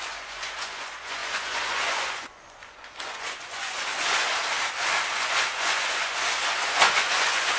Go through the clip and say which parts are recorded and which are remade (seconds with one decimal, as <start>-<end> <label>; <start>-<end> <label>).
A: 0.0-4.3 remade; 4.3-5.1 recorded; 5.1-7.6 remade